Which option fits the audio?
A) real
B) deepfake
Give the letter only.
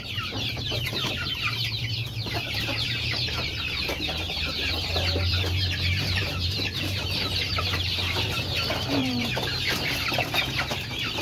B